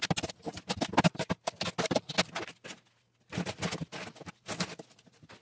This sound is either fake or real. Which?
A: real